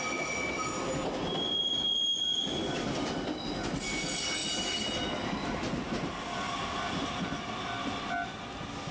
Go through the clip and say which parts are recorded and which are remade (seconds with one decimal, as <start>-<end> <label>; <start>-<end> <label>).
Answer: 0.0-8.9 recorded